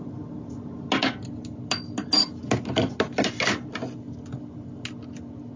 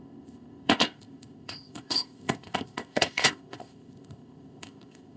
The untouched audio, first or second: first